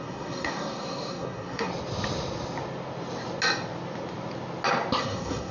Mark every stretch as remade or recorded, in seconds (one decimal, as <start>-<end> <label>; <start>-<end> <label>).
0.0-1.7 remade; 1.7-5.0 recorded; 5.0-5.5 remade